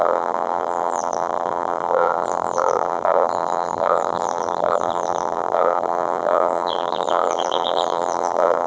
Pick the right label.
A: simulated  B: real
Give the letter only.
A